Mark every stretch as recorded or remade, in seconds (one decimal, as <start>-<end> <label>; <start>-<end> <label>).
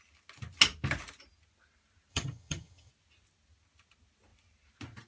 0.0-2.1 recorded; 2.1-2.9 remade; 2.9-5.1 recorded